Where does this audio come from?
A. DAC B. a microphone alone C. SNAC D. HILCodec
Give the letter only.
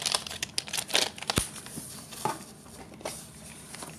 B